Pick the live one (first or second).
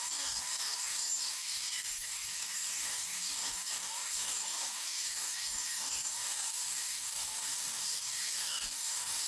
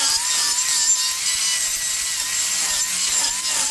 second